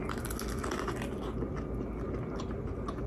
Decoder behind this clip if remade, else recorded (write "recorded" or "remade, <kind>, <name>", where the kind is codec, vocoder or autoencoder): recorded